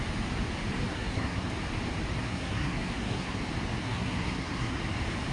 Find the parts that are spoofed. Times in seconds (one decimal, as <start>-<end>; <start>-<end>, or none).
0.9-1.5; 2.2-3.4; 3.8-4.8